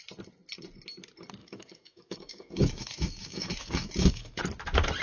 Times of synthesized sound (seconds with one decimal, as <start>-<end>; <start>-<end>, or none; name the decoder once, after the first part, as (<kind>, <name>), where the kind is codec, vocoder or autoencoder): 1.4-4.4 (autoencoder, DAC-VAE)